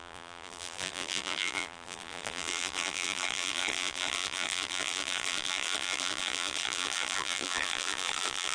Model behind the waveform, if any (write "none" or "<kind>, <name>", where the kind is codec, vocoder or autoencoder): vocoder, BigVGAN v2